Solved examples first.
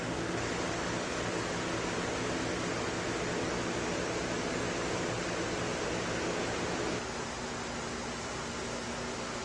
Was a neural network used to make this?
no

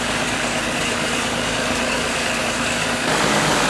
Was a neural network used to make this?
yes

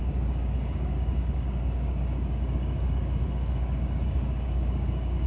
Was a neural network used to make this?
yes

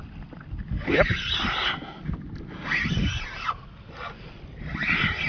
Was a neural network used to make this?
no